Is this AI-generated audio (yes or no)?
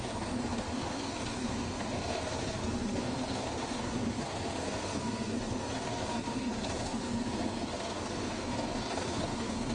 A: yes